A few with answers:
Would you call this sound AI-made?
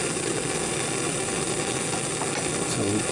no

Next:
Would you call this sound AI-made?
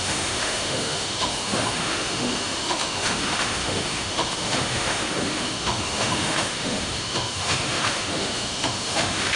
yes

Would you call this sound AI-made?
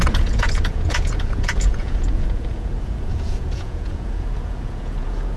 yes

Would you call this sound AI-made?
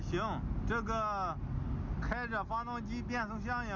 no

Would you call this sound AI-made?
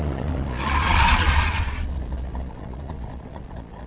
yes